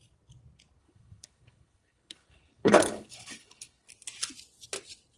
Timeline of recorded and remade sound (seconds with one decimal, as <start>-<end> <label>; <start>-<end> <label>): 0.0-0.8 recorded; 0.8-3.9 remade; 3.9-5.2 recorded